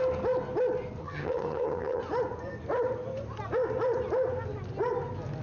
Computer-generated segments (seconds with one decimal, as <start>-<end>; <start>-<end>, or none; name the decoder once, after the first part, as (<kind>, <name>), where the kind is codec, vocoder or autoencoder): 1.0-2.0 (vocoder, HiFi-GAN)

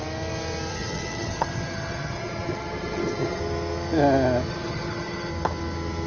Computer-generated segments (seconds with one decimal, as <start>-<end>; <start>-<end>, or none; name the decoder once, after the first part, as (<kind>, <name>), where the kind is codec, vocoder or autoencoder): 0.7-3.4 (vocoder, HiFi-GAN); 4.5-5.3